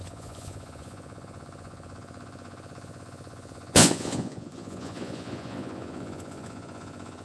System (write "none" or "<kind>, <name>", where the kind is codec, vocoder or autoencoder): vocoder, Vocos